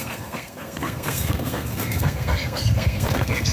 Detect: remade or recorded remade